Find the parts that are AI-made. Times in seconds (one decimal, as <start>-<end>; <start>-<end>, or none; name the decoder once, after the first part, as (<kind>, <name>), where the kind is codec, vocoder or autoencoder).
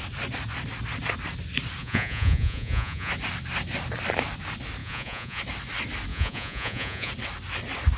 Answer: 1.8-3.1 (vocoder, Vocos); 4.8-5.4; 6.1-7.1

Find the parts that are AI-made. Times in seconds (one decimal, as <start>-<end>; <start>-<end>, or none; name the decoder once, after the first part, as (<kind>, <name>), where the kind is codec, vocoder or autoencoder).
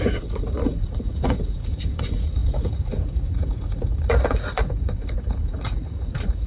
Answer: 0.0-6.5 (vocoder, Vocos)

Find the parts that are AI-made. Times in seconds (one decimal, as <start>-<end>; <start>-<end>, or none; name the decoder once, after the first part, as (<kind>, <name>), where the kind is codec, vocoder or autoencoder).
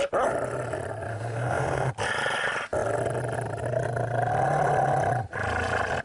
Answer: 1.1-1.9 (autoencoder, DAC-VAE)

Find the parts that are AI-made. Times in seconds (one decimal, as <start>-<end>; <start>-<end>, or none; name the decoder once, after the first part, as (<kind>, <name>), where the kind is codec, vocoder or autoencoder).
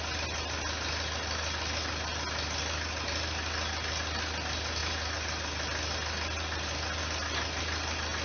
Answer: none